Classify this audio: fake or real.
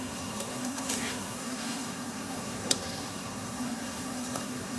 fake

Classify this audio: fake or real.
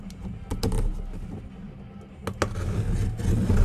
real